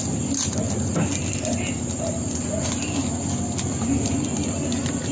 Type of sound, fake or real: real